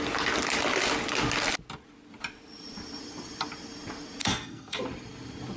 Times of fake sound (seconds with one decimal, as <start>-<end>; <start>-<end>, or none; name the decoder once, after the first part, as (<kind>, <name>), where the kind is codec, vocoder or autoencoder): 4.2-4.8 (codec, SNAC)